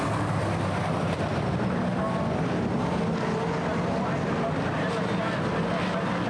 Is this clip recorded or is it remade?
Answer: recorded